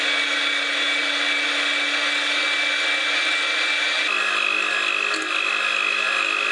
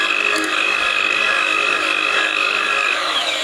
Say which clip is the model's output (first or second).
second